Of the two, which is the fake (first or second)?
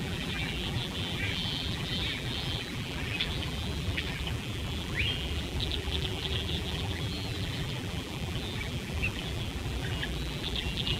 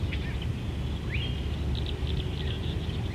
first